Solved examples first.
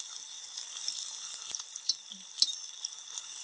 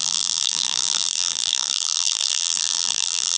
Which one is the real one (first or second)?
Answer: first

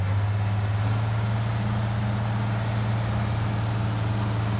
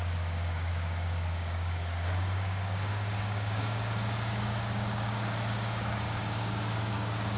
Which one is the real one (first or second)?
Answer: first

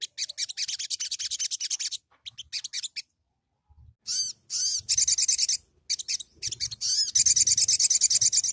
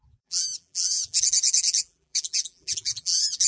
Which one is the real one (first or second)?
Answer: first